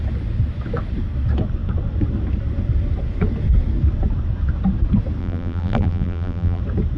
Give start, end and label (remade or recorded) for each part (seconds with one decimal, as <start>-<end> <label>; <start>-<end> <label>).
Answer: 0.0-5.2 recorded; 5.2-6.6 remade; 6.6-7.0 recorded